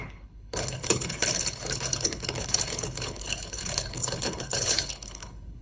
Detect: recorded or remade remade